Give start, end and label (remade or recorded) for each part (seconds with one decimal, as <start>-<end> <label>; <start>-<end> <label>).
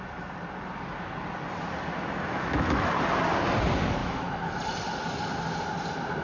0.0-2.2 recorded; 2.2-2.9 remade; 2.9-4.0 recorded; 4.0-4.5 remade; 4.5-6.2 recorded